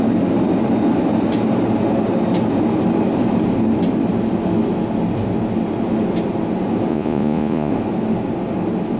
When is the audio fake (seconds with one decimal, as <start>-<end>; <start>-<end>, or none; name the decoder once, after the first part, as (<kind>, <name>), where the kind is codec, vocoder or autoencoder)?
6.9-7.7 (vocoder, Vocos)